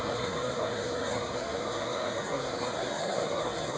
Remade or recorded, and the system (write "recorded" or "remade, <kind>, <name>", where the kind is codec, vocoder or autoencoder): remade, codec, SNAC